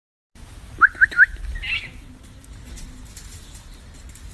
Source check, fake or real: real